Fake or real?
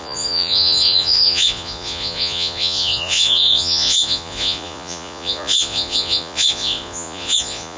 fake